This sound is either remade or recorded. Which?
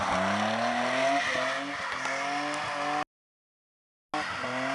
recorded